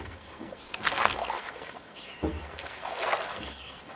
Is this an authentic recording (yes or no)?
no